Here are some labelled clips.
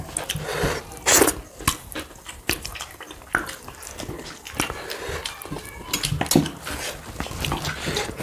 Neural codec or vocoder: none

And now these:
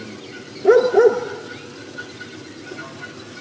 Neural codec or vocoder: none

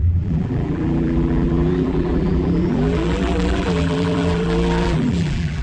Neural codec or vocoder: vocoder, BigVGAN v2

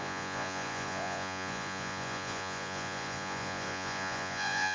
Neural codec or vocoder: vocoder, Vocos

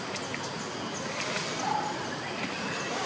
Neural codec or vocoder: none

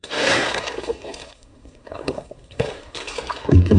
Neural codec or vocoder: codec, SNAC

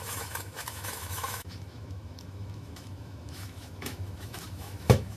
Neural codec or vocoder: autoencoder, DAC-VAE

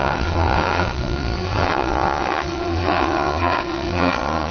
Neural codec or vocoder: vocoder, WaveNeXt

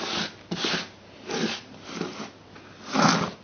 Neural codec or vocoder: none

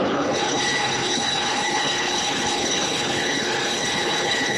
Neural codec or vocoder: codec, HILCodec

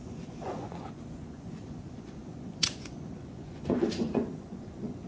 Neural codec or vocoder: vocoder, Vocos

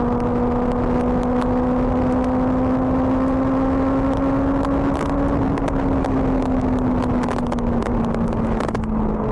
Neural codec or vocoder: none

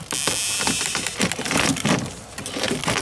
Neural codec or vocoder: none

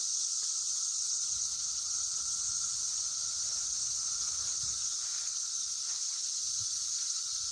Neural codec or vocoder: none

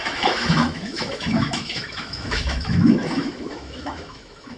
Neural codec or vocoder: autoencoder, DAC-VAE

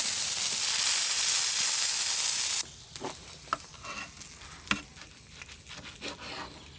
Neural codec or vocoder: none